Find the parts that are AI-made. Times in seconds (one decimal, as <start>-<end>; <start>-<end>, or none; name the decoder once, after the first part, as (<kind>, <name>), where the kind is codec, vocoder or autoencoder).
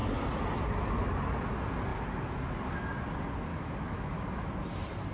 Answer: 3.5-4.5 (autoencoder, DAC-VAE)